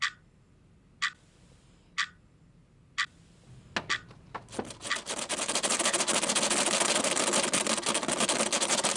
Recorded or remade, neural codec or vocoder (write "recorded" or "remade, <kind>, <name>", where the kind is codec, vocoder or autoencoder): recorded